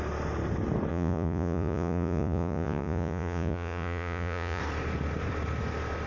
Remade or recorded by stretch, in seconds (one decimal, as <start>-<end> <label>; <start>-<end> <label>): 0.0-0.9 recorded; 0.9-4.6 remade; 4.6-6.1 recorded